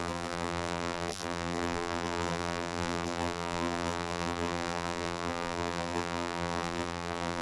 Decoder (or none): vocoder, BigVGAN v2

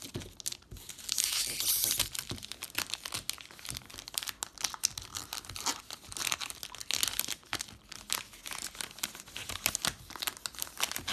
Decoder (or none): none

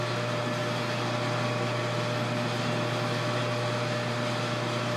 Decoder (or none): none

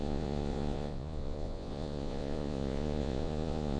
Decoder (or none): vocoder, Vocos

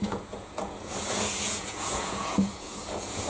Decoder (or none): vocoder, Vocos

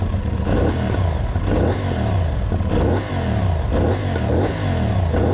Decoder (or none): none